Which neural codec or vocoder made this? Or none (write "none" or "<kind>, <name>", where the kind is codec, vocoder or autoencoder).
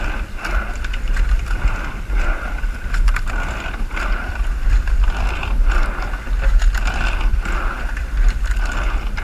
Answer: none